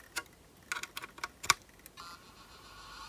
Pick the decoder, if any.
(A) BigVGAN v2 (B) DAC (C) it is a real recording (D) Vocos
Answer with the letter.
C